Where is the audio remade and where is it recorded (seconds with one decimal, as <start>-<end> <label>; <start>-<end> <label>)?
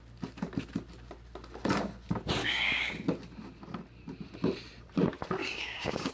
0.0-2.4 recorded; 2.4-2.9 remade; 2.9-5.4 recorded; 5.4-6.1 remade